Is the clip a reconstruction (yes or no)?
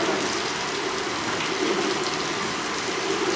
no